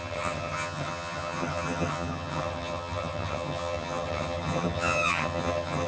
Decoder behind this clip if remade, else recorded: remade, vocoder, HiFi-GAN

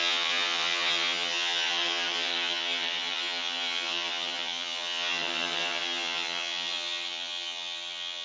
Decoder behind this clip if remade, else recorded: remade, vocoder, HiFi-GAN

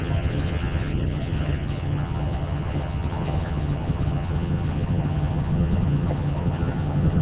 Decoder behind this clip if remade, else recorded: remade, vocoder, HiFi-GAN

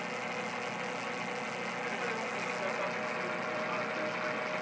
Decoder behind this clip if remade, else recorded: recorded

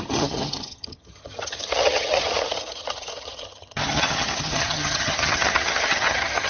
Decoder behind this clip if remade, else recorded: remade, vocoder, HiFi-GAN